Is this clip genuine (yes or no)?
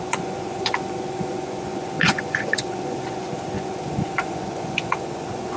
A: no